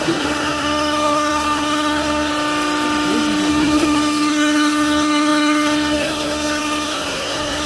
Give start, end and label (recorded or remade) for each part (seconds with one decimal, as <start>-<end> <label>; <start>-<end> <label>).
0.0-2.3 remade; 2.3-3.5 recorded; 3.5-7.7 remade